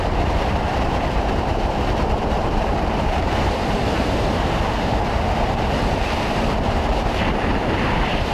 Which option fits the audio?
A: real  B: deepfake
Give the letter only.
B